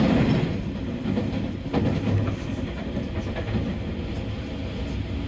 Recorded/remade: recorded